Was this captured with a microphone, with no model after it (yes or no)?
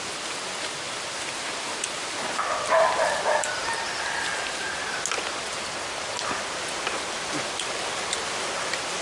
yes